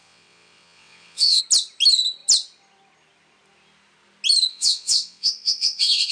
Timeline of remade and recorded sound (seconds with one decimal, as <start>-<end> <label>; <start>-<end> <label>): 0.0-1.4 remade; 1.4-4.5 recorded; 4.5-6.1 remade